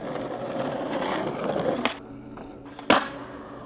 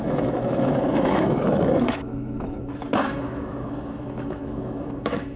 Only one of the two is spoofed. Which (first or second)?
second